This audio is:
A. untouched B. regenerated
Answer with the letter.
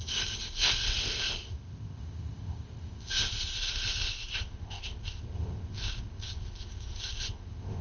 B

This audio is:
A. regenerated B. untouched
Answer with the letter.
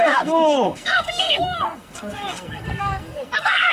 A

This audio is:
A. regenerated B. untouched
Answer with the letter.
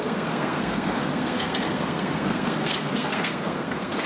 A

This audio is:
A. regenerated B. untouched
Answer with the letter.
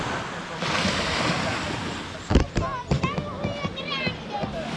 B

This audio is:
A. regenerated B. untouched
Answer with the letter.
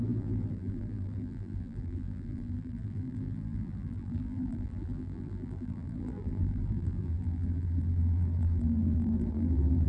A